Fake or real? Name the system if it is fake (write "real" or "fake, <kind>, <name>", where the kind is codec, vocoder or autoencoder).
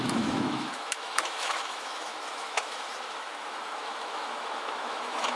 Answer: fake, autoencoder, DAC-VAE